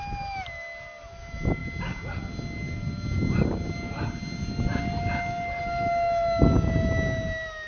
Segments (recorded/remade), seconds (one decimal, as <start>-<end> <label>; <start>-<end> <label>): 0.0-7.7 recorded